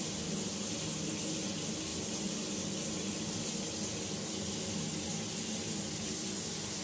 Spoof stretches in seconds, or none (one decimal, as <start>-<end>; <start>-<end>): none